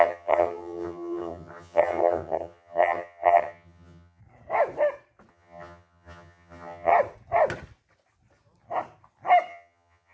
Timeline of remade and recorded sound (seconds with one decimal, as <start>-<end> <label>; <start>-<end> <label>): 0.0-4.2 remade; 4.2-5.3 recorded; 5.3-6.9 remade; 6.9-9.5 recorded; 9.5-10.1 remade